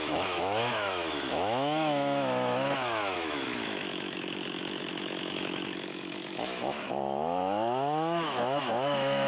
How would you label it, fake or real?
fake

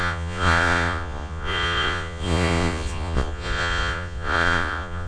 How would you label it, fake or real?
fake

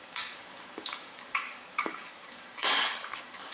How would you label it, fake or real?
fake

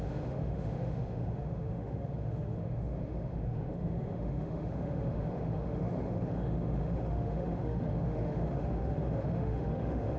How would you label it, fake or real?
fake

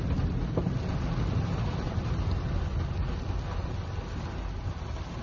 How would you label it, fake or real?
real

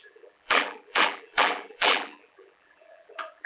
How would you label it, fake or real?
fake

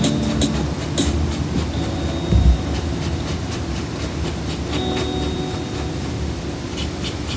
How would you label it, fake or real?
real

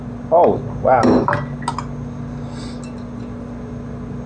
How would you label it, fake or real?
real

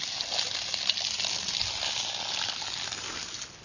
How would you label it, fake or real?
real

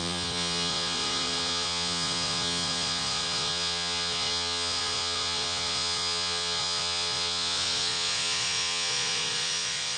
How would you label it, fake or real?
fake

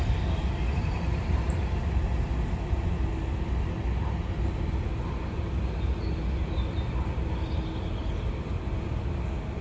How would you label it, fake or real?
real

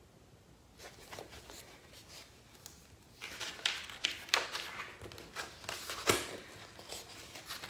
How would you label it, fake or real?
real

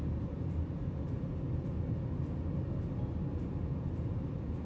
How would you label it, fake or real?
real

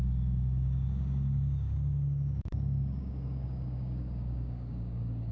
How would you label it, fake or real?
fake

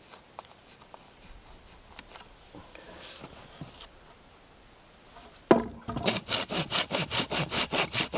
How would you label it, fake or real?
real